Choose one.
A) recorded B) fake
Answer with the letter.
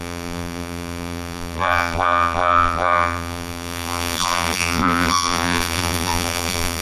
B